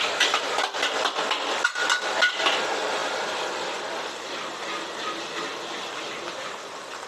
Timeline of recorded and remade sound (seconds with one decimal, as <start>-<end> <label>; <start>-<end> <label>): 0.0-7.1 recorded